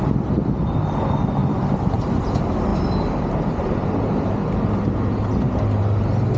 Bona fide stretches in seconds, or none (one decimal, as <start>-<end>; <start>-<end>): 0.0-1.4; 2.1-2.7; 5.6-6.4